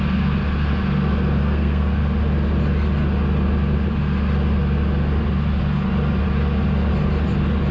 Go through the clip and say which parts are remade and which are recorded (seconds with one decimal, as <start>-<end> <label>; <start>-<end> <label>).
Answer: 0.0-1.4 recorded; 1.4-2.0 remade; 2.0-7.7 recorded